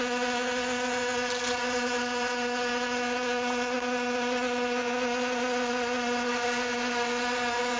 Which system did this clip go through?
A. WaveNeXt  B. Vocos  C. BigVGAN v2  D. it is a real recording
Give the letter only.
D